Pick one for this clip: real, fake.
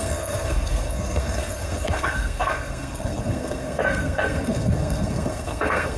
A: fake